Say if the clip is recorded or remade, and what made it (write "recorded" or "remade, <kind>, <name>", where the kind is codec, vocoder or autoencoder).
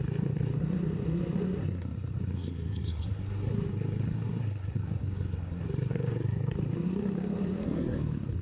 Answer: remade, codec, SNAC